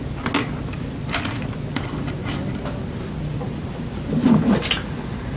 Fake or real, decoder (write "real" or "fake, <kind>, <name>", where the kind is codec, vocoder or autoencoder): real